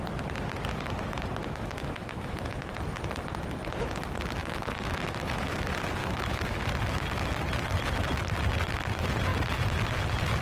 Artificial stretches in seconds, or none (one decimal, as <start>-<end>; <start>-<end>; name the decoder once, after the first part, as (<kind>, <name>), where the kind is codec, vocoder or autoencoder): 1.4-2.7 (autoencoder, DAC-VAE); 4.4-5.6; 6.0-6.6